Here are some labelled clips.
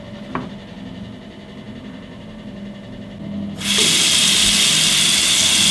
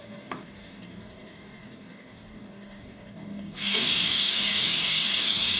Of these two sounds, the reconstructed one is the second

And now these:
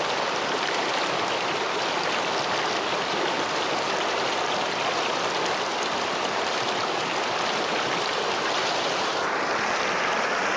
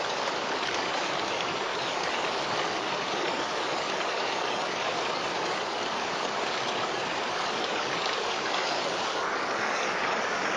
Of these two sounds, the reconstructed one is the second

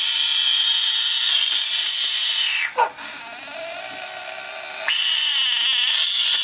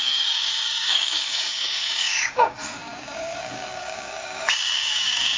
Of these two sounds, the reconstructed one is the second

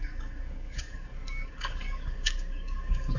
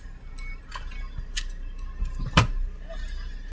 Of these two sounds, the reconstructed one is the first